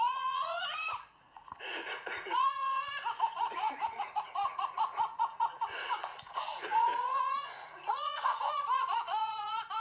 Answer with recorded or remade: remade